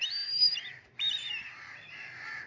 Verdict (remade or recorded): remade